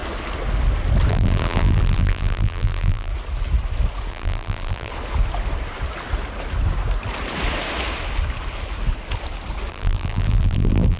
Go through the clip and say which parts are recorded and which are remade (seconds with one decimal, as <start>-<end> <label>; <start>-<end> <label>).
0.0-1.1 recorded; 1.1-3.1 remade; 3.1-4.1 recorded; 4.1-4.9 remade; 4.9-9.7 recorded; 9.7-11.0 remade

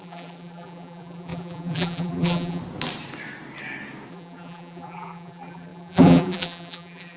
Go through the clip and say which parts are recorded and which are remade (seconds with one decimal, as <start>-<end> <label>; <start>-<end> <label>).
0.0-2.6 remade; 2.6-4.1 recorded; 4.1-7.2 remade